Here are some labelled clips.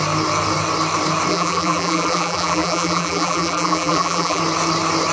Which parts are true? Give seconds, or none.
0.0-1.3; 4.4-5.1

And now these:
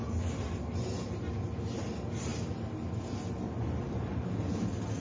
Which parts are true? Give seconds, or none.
0.0-5.0